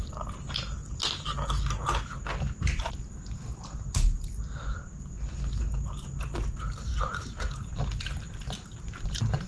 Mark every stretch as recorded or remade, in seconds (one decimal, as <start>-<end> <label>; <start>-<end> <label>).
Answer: 0.0-9.5 recorded